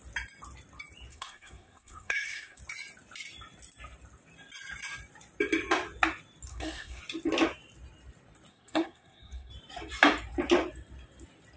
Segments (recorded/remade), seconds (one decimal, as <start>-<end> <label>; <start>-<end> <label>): 0.0-1.1 recorded; 1.1-2.6 remade; 2.6-6.5 recorded; 6.5-7.0 remade; 7.0-8.5 recorded; 8.5-9.5 remade; 9.5-11.6 recorded